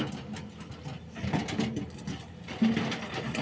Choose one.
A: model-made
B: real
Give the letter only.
B